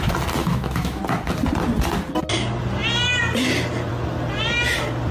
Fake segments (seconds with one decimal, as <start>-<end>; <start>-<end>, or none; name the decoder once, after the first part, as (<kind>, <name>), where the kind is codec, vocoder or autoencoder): 0.4-1.0 (autoencoder, DAC-VAE)